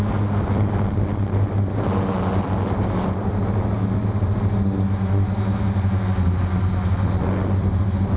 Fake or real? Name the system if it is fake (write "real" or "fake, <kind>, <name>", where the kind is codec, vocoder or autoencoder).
real